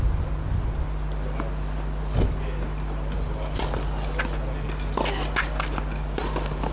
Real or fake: real